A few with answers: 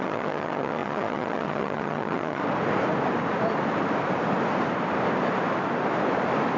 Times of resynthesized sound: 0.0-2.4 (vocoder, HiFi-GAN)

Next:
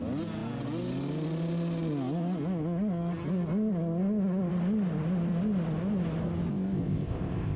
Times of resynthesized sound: 6.5-7.6 (codec, ZipCodec)

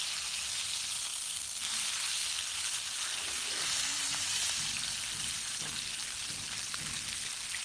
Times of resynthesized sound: 1.1-1.7 (codec, SNAC)

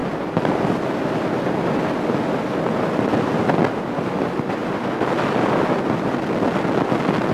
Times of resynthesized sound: none